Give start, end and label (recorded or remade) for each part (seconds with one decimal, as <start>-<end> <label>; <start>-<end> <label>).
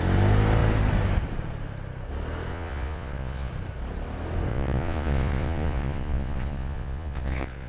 0.0-2.5 recorded; 2.5-3.5 remade; 3.5-4.5 recorded; 4.5-7.7 remade